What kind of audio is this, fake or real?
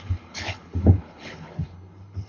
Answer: fake